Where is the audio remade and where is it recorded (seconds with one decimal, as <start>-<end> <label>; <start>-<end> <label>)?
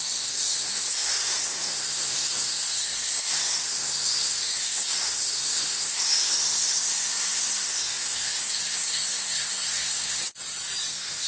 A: 0.0-10.2 remade; 10.2-10.9 recorded; 10.9-11.3 remade